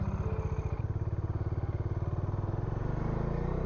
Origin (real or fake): real